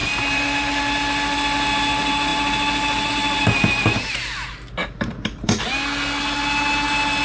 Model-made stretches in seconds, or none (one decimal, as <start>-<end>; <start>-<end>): 0.0-0.8; 4.8-5.5